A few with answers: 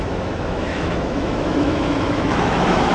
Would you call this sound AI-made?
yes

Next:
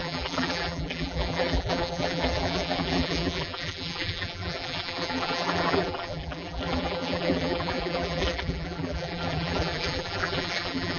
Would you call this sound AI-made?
yes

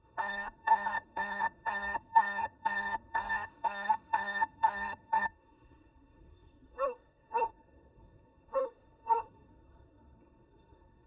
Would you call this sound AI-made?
yes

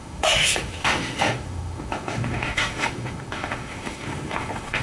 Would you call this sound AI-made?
yes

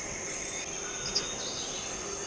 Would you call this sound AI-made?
no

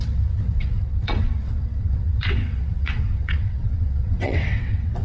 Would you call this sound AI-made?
yes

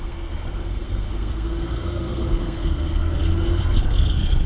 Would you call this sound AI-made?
yes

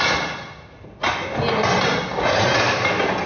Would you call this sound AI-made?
no